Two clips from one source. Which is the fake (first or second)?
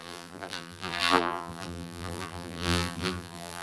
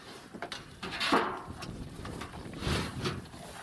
first